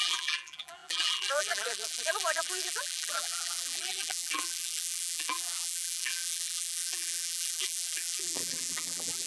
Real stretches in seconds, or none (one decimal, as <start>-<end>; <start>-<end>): none